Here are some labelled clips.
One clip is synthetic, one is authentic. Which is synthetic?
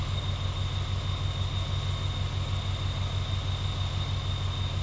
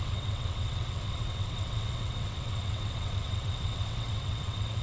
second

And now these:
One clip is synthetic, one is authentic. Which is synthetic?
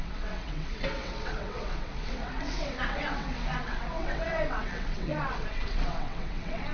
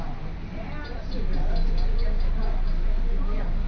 first